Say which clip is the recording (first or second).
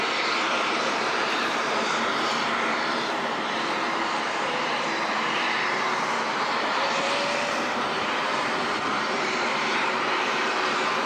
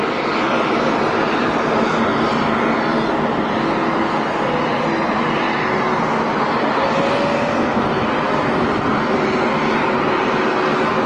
second